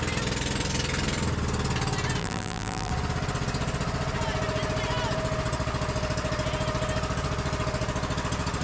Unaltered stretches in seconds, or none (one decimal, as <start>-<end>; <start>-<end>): 0.0-2.2; 2.9-8.6